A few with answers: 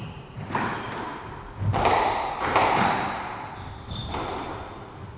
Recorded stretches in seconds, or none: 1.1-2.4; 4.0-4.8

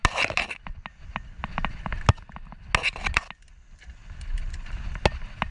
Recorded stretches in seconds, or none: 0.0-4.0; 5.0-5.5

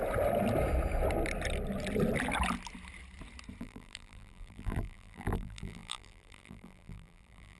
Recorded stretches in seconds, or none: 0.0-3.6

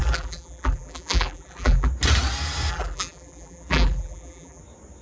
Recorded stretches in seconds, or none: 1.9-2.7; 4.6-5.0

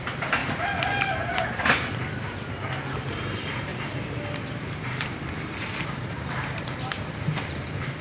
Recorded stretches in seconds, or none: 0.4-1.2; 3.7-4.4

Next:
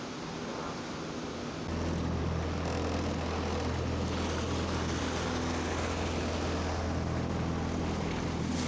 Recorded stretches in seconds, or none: 0.0-8.7

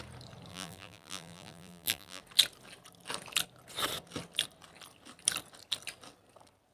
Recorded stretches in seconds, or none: 0.0-0.5; 2.2-6.7

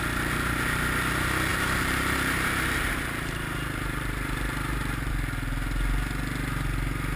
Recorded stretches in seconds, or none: 0.0-1.5; 5.1-7.2